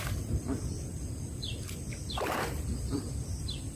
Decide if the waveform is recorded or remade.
remade